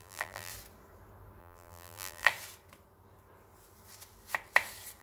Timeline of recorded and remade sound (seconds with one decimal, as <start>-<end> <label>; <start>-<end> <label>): 0.0-0.5 remade; 0.5-1.4 recorded; 1.4-2.3 remade; 2.3-5.0 recorded